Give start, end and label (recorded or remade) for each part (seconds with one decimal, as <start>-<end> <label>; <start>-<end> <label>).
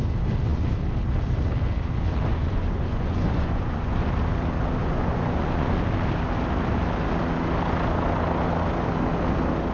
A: 0.0-2.3 recorded; 2.3-4.0 remade; 4.0-4.8 recorded; 4.8-5.7 remade; 5.7-9.7 recorded